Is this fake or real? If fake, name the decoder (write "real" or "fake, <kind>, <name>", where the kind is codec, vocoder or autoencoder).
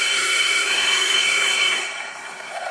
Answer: fake, codec, SNAC